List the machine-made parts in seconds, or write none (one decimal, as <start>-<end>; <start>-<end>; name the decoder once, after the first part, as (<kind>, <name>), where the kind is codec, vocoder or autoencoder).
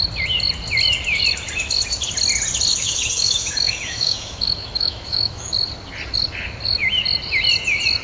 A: 2.7-5.5 (autoencoder, DAC-VAE)